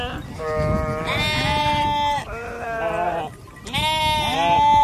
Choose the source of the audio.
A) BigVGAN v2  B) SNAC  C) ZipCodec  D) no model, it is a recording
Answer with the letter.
D